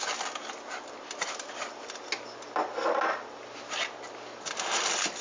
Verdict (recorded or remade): recorded